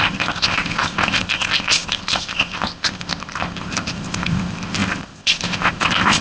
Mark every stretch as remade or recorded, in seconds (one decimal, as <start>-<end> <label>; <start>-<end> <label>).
0.0-6.2 remade